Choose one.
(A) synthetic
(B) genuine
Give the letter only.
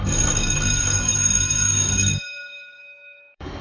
A